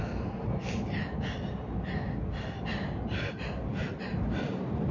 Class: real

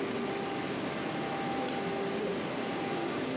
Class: real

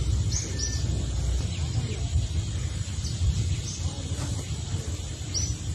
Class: real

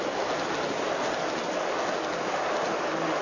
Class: real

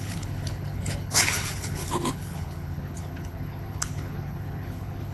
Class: fake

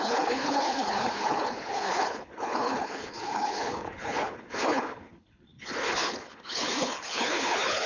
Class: fake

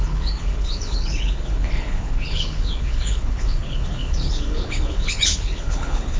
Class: fake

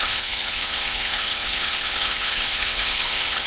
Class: fake